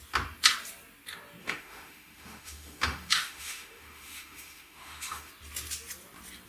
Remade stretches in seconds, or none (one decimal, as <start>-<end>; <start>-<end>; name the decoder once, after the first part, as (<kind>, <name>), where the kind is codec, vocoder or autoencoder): 1.4-5.3 (autoencoder, DAC-VAE)